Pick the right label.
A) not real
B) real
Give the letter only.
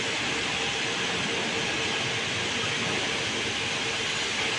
B